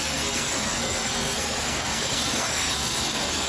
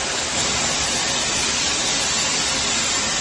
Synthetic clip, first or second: first